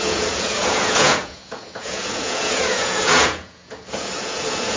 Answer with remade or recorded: remade